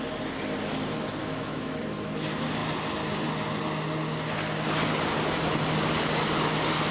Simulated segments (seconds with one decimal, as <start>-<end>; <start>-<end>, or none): 1.2-1.8